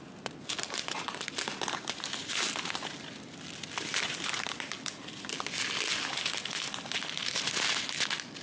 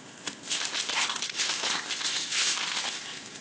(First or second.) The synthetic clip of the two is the second